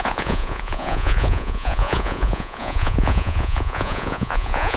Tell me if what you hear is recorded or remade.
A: remade